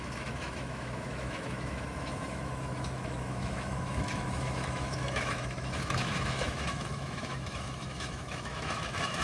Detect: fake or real fake